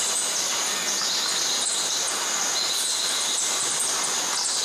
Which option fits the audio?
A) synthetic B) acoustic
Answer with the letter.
B